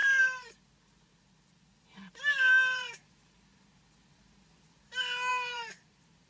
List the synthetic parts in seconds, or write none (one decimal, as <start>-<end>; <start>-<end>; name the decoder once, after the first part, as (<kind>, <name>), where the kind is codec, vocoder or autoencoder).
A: 2.1-3.5 (vocoder, BigVGAN v2); 5.3-6.3